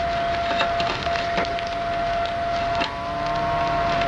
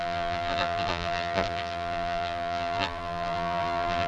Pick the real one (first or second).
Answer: first